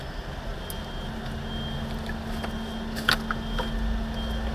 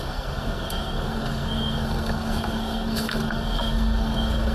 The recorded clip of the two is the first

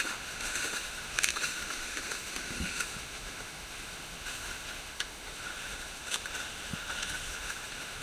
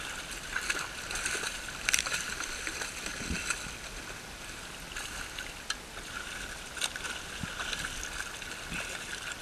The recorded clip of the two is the second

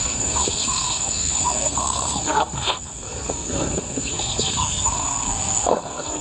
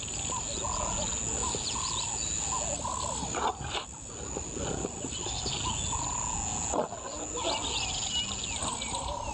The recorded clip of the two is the second